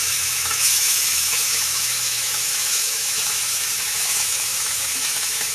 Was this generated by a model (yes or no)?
yes